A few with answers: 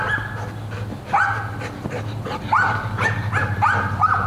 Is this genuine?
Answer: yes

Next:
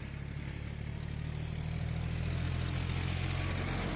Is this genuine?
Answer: yes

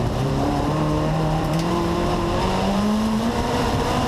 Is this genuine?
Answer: no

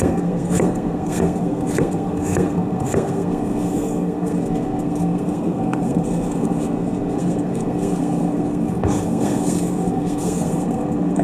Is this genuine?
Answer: no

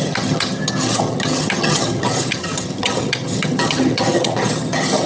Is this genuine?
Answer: no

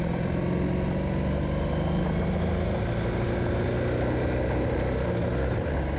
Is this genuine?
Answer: yes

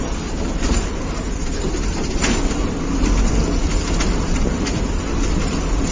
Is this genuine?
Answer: yes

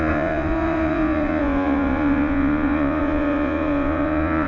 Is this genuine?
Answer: no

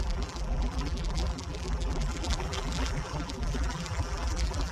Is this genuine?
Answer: no